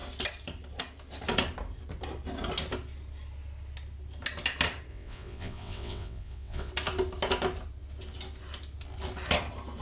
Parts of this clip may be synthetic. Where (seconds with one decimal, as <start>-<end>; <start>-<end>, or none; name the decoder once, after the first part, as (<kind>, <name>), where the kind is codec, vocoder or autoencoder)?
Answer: 4.9-6.7 (vocoder, WaveNeXt)